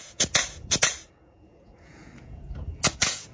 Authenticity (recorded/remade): remade